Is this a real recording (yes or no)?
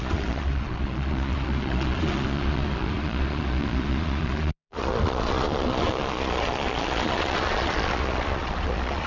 no